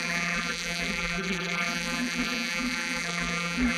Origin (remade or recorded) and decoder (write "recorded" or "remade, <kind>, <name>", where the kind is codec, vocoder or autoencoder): remade, vocoder, BigVGAN v2